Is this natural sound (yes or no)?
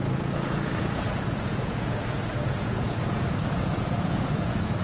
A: no